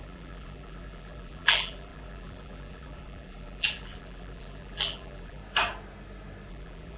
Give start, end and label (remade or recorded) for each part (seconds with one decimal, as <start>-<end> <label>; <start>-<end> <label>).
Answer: 0.0-5.4 remade; 5.4-6.5 recorded; 6.5-7.0 remade